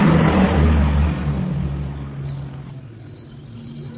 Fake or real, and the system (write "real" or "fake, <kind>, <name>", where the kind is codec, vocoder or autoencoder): real